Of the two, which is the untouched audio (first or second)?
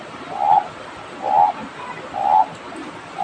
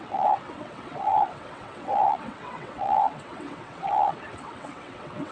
first